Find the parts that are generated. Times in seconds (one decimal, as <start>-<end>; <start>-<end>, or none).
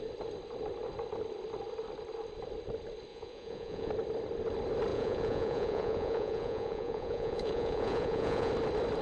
3.1-3.9; 4.9-8.5